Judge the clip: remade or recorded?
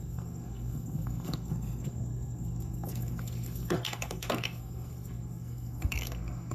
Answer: remade